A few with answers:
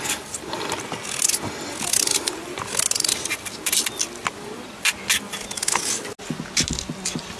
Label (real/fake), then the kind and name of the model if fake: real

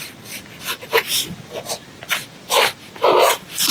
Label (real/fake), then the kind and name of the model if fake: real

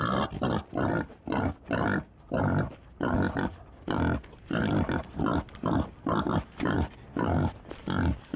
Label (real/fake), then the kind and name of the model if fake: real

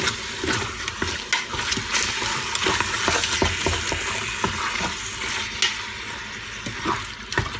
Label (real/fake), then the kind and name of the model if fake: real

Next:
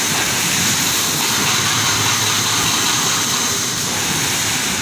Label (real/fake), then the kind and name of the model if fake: fake, vocoder, BigVGAN v2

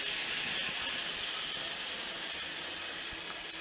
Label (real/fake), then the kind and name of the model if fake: real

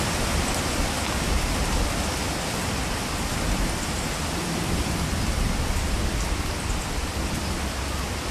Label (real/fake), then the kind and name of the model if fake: real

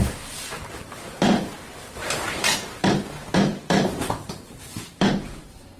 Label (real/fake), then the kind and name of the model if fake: fake, vocoder, BigVGAN v2